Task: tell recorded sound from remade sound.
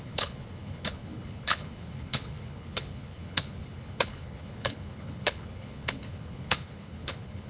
remade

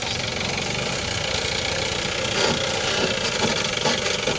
recorded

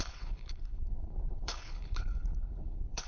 remade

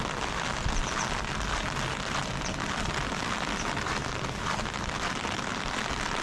recorded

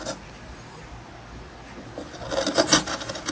recorded